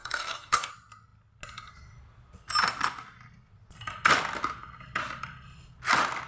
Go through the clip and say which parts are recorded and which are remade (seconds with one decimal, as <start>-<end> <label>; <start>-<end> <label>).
0.0-0.7 remade; 0.7-6.3 recorded